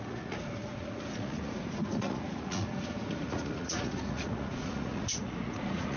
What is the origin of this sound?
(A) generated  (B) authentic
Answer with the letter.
A